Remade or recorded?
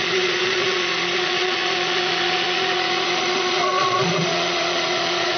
remade